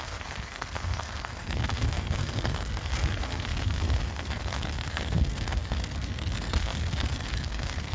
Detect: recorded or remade remade